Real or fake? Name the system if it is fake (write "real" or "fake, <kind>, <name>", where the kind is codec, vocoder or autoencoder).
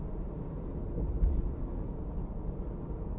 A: real